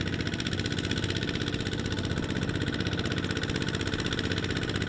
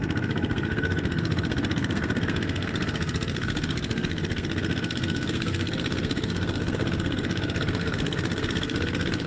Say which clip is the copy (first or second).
second